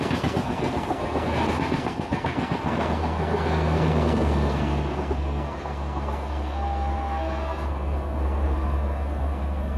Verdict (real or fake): fake